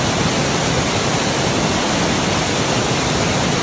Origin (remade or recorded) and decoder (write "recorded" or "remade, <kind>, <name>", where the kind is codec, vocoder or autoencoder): recorded